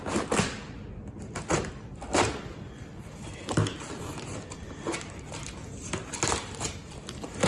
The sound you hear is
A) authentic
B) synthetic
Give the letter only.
A